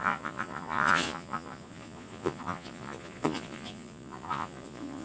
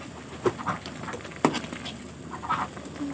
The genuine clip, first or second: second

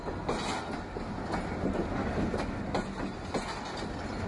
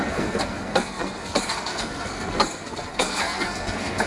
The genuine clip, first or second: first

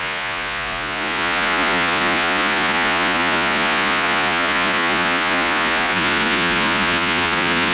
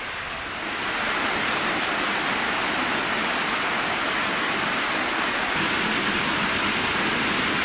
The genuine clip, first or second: second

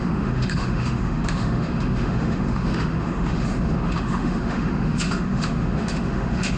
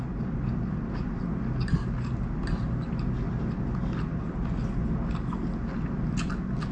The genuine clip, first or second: second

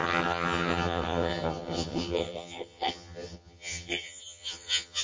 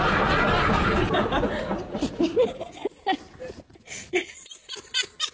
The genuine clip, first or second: second